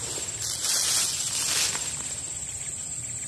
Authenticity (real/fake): real